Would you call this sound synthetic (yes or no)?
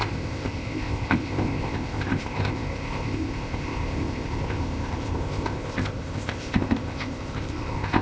yes